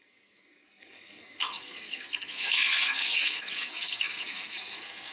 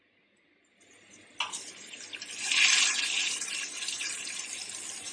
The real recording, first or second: second